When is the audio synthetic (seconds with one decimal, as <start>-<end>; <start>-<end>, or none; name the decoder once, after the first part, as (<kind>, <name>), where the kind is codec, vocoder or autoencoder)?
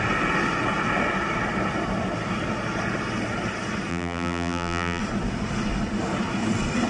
3.9-5.0 (vocoder, BigVGAN v2)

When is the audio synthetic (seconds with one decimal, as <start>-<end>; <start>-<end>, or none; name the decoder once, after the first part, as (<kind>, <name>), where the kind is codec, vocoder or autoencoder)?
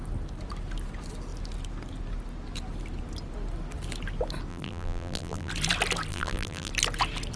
4.5-5.5 (vocoder, BigVGAN v2); 6.1-6.7